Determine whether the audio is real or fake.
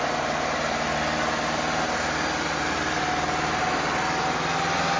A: real